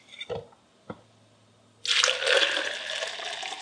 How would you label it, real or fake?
real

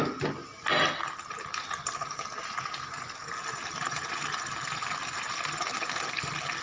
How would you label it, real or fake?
real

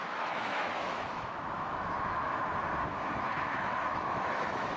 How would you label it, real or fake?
fake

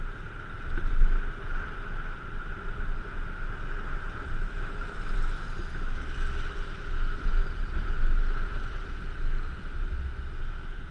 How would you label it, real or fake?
real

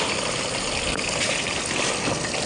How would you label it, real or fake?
real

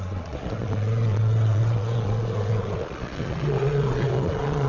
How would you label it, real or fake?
fake